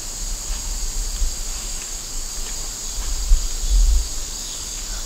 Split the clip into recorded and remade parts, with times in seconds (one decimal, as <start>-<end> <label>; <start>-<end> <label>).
0.0-1.7 recorded; 1.7-2.3 remade; 2.3-4.2 recorded; 4.2-5.1 remade